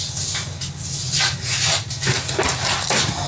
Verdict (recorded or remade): recorded